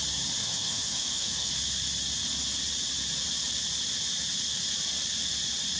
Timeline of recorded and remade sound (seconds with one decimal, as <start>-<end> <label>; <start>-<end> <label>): 0.0-0.4 recorded; 0.4-1.5 remade; 1.5-5.8 recorded